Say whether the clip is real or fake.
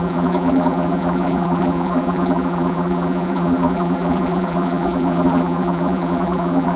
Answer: fake